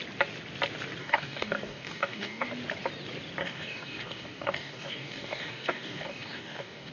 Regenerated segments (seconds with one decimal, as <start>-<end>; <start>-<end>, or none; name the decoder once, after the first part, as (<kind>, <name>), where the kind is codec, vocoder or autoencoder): 1.0-2.5 (codec, DAC); 3.4-6.9